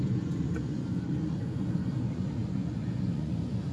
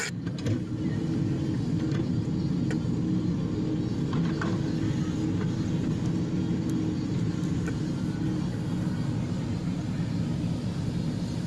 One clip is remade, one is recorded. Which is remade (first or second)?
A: first